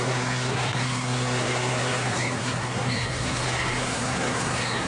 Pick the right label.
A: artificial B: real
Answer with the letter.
A